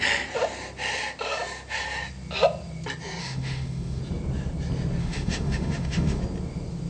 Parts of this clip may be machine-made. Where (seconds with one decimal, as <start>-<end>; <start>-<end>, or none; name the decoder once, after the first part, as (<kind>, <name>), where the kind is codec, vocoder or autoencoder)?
3.2-4.0 (autoencoder, DAC-VAE); 5.0-6.2